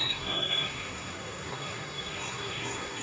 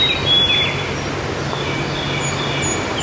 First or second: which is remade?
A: first